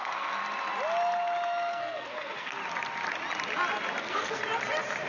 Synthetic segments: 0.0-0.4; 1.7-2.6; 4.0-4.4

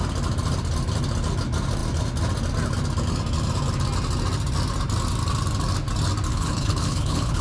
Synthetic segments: 6.3-7.4

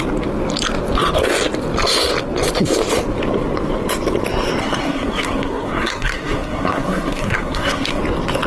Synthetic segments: 4.6-8.0

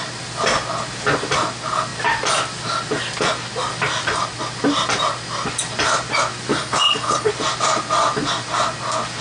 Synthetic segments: 6.5-7.3

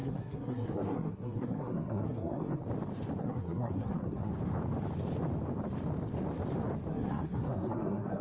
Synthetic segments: 0.0-2.6; 3.2-4.3; 6.9-8.2

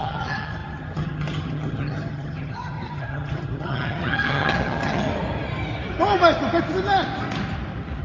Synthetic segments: 0.0-5.1

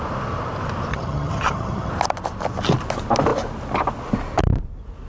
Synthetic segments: 0.9-1.9